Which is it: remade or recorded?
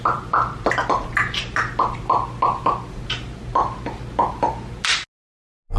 recorded